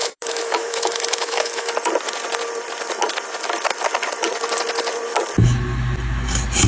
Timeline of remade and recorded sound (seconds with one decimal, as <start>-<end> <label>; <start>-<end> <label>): 0.0-1.7 remade; 1.7-6.7 recorded